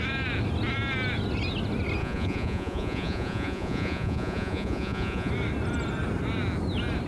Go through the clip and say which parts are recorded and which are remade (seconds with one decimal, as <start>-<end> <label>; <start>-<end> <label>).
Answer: 0.0-2.0 recorded; 2.0-5.3 remade; 5.3-7.1 recorded